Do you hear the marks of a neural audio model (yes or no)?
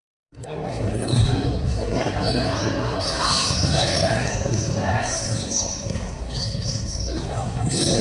yes